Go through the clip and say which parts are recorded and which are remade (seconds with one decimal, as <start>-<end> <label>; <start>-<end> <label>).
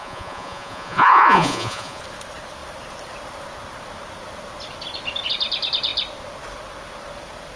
0.0-2.0 remade; 2.0-7.6 recorded